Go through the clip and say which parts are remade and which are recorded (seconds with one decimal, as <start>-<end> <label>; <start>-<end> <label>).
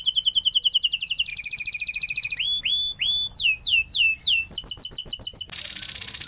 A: 0.0-6.3 recorded